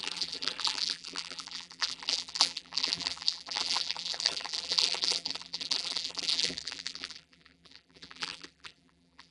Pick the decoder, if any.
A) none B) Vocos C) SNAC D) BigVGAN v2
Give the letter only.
D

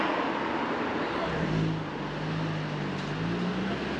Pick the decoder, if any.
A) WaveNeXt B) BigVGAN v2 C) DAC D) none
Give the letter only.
D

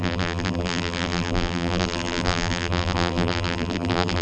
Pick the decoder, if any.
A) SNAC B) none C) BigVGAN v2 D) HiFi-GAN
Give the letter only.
C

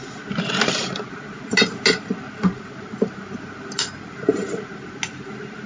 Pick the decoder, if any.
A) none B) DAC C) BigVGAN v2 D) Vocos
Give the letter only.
A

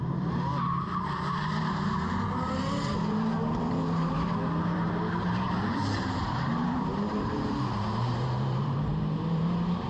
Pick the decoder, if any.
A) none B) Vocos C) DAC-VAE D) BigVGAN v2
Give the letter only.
D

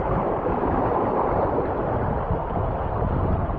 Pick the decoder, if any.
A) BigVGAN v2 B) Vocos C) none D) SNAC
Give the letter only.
A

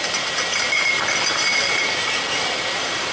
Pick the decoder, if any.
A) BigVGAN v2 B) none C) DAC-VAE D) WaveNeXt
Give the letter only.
B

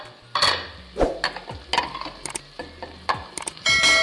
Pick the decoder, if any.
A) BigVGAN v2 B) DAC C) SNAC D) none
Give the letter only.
D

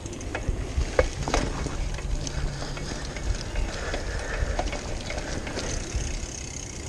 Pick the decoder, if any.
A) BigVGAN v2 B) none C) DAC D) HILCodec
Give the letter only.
B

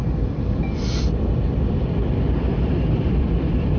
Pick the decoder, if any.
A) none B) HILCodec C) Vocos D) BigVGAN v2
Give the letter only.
D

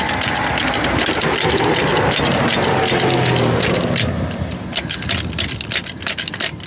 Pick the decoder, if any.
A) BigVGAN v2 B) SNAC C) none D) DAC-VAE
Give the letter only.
C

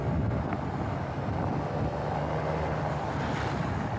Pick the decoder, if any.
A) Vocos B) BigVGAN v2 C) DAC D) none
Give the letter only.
D